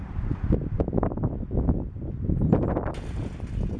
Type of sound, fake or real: fake